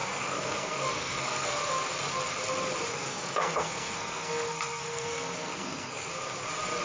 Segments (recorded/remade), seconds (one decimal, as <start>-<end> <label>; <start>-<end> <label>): 0.0-1.6 remade; 1.6-2.9 recorded; 2.9-6.1 remade; 6.1-6.8 recorded

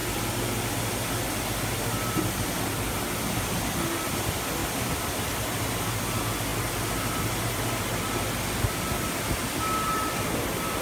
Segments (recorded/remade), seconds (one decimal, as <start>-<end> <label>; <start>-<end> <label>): 0.0-4.6 recorded; 4.6-5.4 remade; 5.4-10.8 recorded

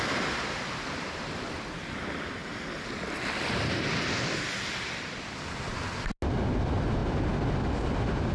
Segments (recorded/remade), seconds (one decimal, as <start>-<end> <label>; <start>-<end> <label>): 0.0-8.3 recorded

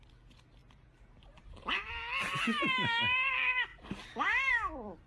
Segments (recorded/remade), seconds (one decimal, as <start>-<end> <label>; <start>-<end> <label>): 0.0-0.6 recorded; 0.6-1.9 remade; 1.9-3.7 recorded; 3.7-4.5 remade; 4.5-5.1 recorded

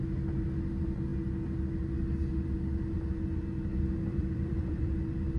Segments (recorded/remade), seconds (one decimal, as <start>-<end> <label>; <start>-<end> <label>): 0.0-3.7 recorded; 3.7-5.0 remade; 5.0-5.4 recorded

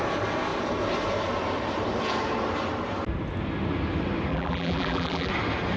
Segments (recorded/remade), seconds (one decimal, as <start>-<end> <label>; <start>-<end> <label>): 0.0-4.3 recorded; 4.3-5.3 remade; 5.3-5.8 recorded

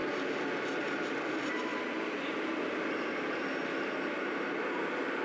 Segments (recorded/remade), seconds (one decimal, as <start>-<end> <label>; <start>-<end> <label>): 0.0-5.2 recorded